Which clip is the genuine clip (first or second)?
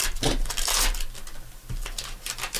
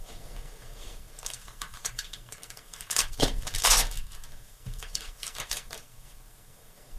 first